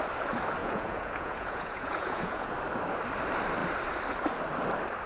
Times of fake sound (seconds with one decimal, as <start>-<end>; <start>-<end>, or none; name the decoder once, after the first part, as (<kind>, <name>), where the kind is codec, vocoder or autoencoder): 0.6-2.5 (vocoder, Vocos)